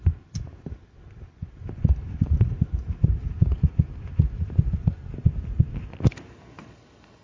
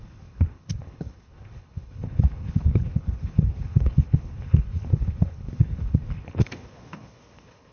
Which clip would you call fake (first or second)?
second